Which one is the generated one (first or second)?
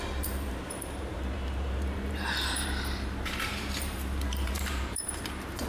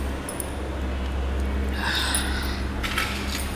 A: first